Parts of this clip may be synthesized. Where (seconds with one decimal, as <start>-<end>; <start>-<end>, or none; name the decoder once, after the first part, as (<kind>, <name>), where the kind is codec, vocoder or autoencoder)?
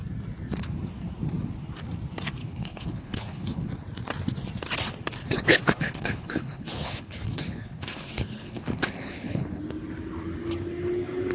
2.4-3.7 (codec, HILCodec); 5.2-9.6